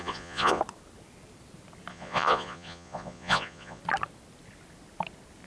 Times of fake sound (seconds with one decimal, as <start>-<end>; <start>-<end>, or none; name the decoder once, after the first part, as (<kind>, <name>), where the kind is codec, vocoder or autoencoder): 0.0-0.6 (vocoder, Vocos); 1.9-3.8